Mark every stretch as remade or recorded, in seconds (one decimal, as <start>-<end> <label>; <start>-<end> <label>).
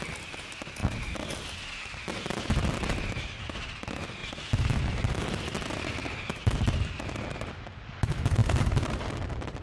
0.0-8.4 recorded; 8.4-9.1 remade; 9.1-9.6 recorded